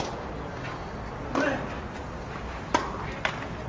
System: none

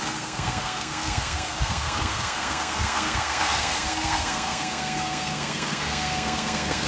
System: codec, SNAC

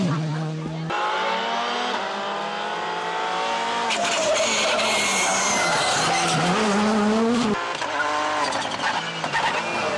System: none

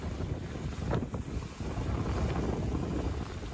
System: none